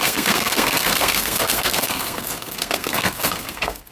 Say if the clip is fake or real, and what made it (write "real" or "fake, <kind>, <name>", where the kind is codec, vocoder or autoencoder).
fake, codec, SNAC